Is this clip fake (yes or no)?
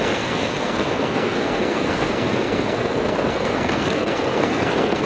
yes